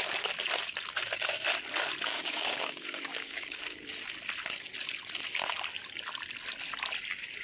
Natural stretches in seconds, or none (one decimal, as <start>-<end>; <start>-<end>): 0.0-2.1; 3.6-7.4